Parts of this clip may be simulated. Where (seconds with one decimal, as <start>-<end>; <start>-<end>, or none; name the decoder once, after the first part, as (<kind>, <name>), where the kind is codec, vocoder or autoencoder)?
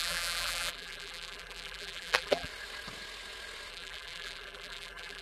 0.0-2.5 (vocoder, BigVGAN v2); 3.7-5.2